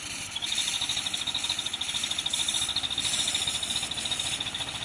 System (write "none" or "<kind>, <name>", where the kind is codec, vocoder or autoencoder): none